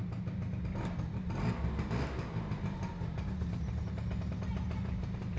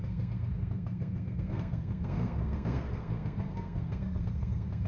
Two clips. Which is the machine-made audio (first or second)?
second